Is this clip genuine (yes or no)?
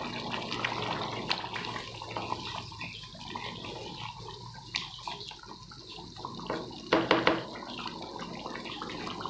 yes